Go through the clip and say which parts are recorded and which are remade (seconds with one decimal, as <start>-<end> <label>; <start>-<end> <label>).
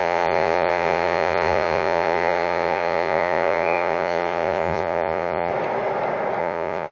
0.0-5.5 remade; 5.5-6.4 recorded; 6.4-6.9 remade